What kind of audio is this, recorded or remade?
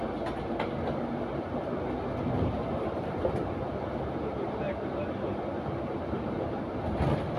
recorded